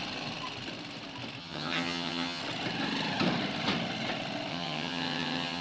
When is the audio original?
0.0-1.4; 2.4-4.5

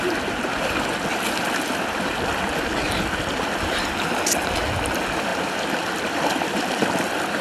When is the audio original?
0.0-5.3; 6.6-7.4